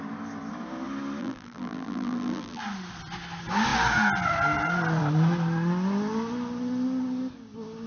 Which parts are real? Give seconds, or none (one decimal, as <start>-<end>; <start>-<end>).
0.0-1.2; 2.6-7.9